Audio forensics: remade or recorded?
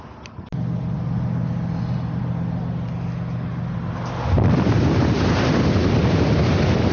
recorded